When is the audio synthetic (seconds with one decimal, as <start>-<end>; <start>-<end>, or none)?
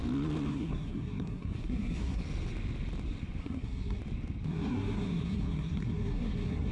0.5-2.2; 3.4-4.0; 4.5-6.7